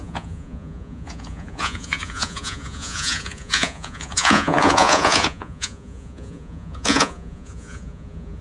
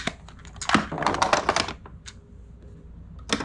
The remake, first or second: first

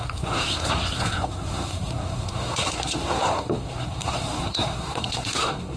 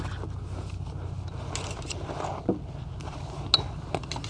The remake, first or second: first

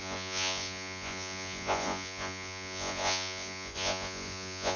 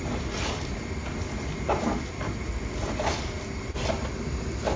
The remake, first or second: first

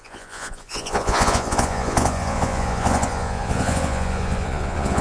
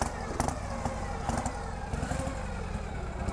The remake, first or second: first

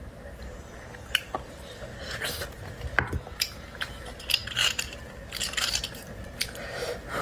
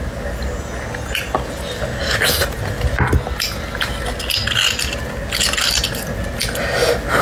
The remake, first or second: first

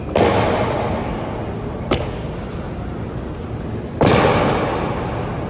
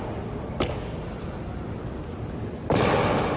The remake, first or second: second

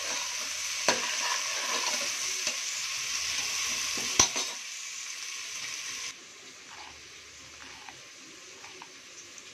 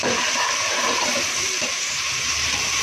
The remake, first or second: second